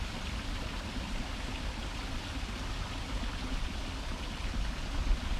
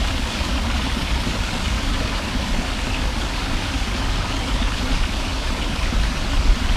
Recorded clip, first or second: first